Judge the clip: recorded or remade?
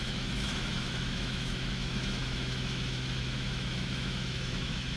remade